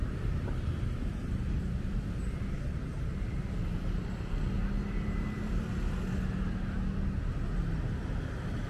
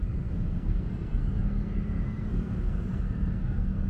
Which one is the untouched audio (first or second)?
first